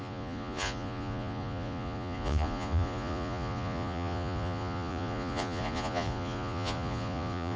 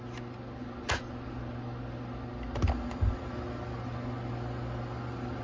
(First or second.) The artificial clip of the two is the first